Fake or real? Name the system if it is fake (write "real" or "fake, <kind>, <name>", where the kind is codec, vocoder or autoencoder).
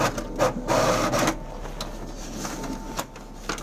real